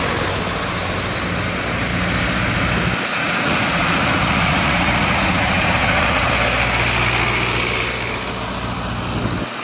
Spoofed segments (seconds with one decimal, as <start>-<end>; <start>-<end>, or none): 3.1-6.3